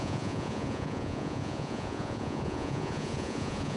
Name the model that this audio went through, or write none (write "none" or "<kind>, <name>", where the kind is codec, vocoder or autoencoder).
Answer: vocoder, Vocos